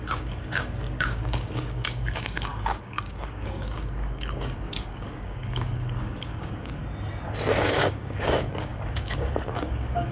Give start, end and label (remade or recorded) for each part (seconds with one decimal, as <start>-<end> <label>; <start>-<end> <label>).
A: 0.0-6.8 remade; 6.8-7.5 recorded; 7.5-10.1 remade